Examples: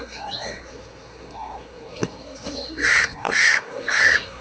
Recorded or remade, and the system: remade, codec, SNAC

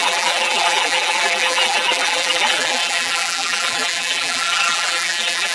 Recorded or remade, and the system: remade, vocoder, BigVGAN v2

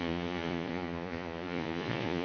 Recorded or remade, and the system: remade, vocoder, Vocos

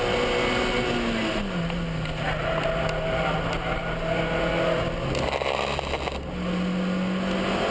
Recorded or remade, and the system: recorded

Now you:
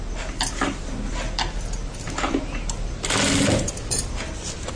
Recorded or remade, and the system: recorded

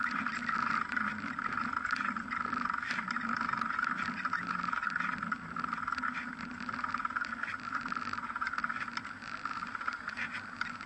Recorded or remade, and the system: recorded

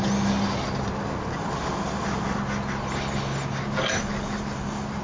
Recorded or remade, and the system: recorded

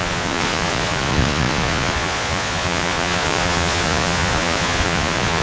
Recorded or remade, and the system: remade, vocoder, Vocos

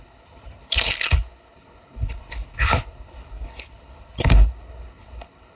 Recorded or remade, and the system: remade, codec, HILCodec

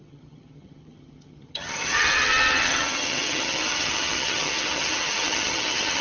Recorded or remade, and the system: remade, vocoder, HiFi-GAN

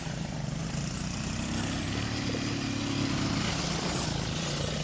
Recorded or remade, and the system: recorded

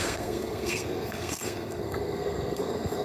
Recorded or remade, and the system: remade, codec, SNAC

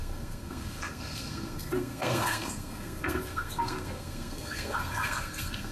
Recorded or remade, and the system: remade, codec, SNAC